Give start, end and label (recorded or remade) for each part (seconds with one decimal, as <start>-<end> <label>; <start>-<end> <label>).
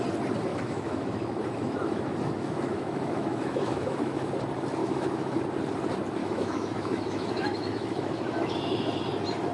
0.0-0.5 recorded; 0.5-4.3 remade; 4.3-4.8 recorded; 4.8-5.4 remade; 5.4-6.2 recorded; 6.2-9.0 remade; 9.0-9.5 recorded